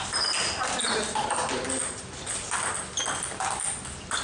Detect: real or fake real